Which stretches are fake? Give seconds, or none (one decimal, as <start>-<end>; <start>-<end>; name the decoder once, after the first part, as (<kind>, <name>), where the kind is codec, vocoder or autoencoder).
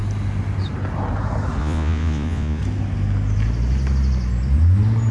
1.6-2.6 (vocoder, Vocos)